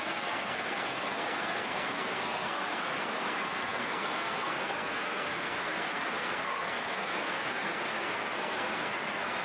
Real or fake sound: fake